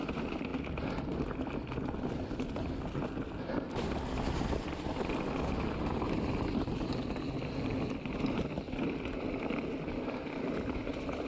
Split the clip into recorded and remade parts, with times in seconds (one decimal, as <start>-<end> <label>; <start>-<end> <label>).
0.0-11.3 recorded